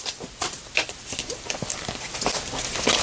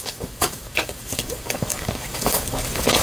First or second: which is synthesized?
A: second